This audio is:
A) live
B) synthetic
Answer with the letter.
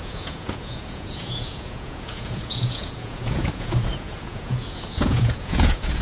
B